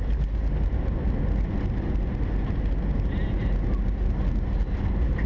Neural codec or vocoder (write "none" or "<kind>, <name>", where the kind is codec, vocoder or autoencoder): none